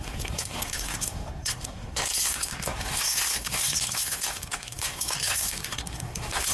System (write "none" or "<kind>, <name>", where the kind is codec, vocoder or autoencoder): codec, SNAC